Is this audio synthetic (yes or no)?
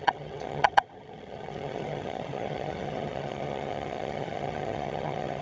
yes